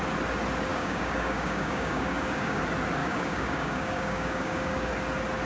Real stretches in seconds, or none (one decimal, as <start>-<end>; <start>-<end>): 0.0-0.7; 2.6-3.0; 4.9-5.5